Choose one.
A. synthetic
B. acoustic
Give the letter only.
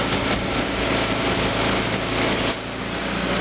B